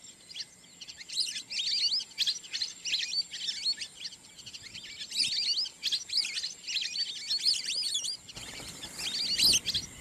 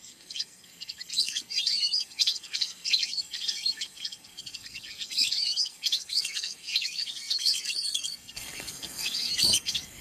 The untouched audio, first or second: first